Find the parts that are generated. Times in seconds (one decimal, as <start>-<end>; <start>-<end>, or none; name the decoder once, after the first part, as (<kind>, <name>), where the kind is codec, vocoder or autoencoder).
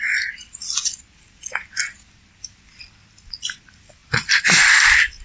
4.0-5.2 (vocoder, BigVGAN v2)